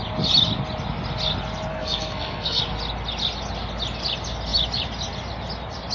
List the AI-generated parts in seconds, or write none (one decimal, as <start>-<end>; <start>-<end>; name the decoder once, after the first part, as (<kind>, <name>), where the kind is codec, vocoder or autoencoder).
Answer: 1.7-2.6 (codec, SNAC)